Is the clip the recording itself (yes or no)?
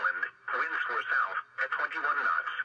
yes